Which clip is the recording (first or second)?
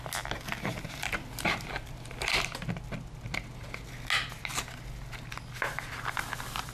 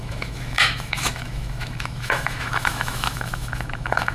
first